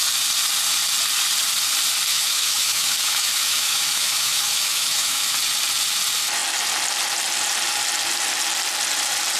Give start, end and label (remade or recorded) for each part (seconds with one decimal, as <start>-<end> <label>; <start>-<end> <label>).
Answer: 0.0-2.1 recorded; 2.1-5.3 remade; 5.3-9.4 recorded